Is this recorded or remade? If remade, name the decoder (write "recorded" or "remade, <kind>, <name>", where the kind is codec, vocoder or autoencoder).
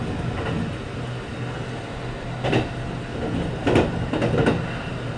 recorded